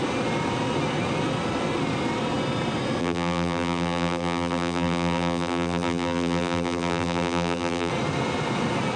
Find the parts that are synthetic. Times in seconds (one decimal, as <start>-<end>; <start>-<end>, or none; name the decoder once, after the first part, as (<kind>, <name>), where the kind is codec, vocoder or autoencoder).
3.0-7.9 (vocoder, BigVGAN v2)